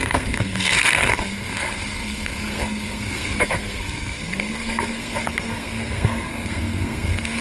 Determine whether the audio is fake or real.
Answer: fake